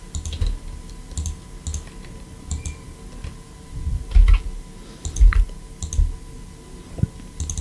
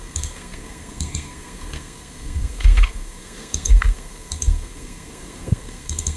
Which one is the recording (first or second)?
first